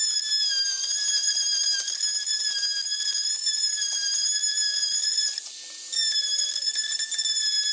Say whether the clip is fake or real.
real